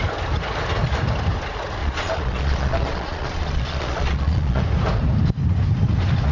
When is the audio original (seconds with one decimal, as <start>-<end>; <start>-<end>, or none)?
0.0-1.8; 4.6-6.3